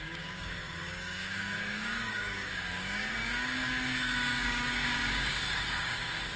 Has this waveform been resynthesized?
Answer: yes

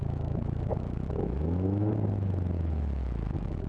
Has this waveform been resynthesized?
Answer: yes